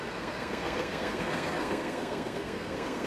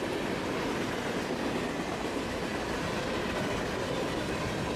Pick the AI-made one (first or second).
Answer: first